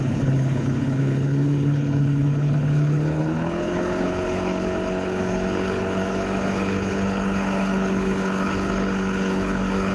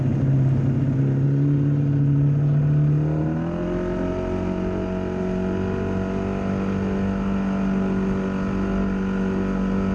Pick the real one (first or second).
second